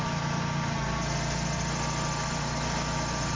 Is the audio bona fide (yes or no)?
yes